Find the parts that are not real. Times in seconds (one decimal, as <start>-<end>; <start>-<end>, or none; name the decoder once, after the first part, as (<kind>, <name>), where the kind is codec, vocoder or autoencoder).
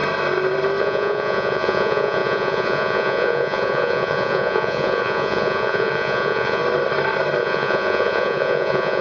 0.8-6.6 (vocoder, Vocos); 7.4-9.0